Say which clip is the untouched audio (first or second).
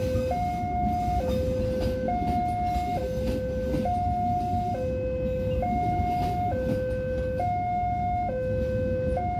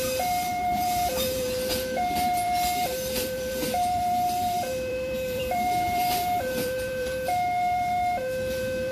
first